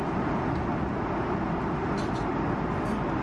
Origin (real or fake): real